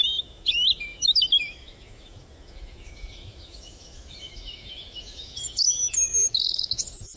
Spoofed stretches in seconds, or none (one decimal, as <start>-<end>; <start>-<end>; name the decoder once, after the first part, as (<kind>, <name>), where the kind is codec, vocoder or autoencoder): 0.0-7.2 (autoencoder, DAC-VAE)